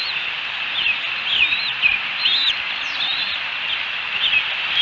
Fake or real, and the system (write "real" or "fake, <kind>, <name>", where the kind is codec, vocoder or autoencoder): fake, vocoder, BigVGAN v2